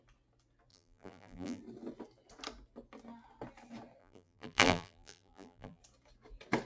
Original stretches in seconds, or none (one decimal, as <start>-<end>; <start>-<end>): 0.0-0.7; 1.6-4.0; 5.8-6.7